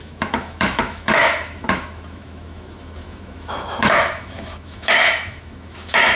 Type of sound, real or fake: fake